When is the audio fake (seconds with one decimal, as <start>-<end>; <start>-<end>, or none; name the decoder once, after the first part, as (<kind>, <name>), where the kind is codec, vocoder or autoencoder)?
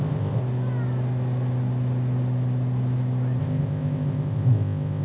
0.0-0.4 (codec, ZipCodec); 3.4-5.0